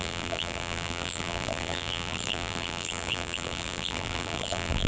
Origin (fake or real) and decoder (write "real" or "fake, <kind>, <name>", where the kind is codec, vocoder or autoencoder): fake, vocoder, BigVGAN v2